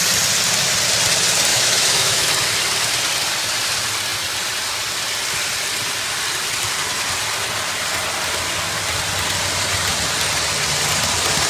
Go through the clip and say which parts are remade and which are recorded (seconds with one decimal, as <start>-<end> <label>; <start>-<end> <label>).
0.0-1.5 recorded; 1.5-2.3 remade; 2.3-11.5 recorded